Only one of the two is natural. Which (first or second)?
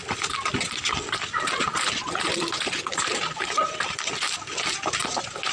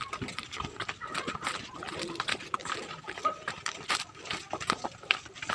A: first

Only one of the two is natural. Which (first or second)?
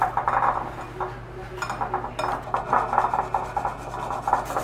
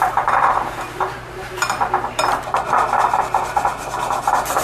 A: first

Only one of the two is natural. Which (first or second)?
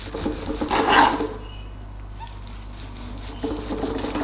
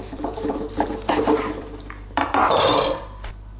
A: first